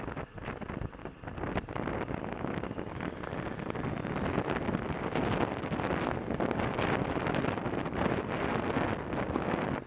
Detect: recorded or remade recorded